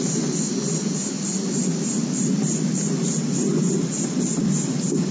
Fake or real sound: real